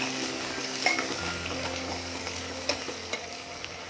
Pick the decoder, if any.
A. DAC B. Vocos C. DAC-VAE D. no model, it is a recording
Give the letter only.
A